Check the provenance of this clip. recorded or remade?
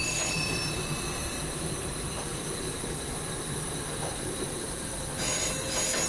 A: remade